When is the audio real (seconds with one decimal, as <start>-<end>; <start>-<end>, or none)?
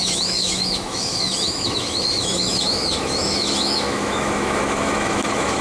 none